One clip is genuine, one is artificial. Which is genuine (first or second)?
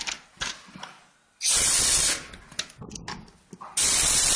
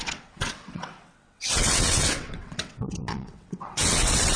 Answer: first